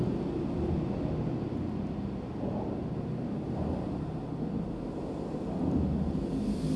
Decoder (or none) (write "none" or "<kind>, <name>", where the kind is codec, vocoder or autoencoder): none